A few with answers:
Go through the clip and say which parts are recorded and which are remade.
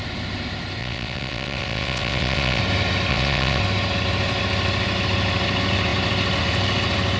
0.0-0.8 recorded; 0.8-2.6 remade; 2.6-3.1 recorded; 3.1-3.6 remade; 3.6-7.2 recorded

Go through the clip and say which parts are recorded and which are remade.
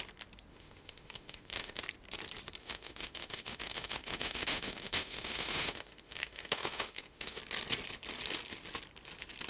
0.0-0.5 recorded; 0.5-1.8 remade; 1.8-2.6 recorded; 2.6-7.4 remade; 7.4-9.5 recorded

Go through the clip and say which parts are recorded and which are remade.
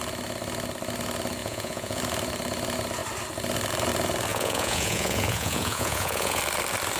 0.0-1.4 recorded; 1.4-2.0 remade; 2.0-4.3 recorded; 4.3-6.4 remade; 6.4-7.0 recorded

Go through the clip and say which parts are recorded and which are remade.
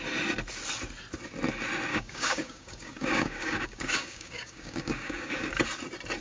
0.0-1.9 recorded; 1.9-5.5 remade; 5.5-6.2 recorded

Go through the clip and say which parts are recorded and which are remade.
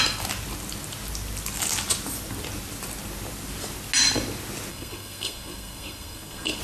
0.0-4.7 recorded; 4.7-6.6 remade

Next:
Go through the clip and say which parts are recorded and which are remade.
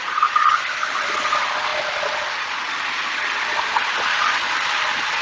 0.0-5.2 recorded